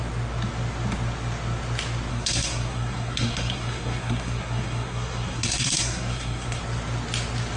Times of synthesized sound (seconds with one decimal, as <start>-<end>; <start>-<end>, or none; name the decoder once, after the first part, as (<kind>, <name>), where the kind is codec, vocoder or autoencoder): 2.1-6.6 (codec, SNAC)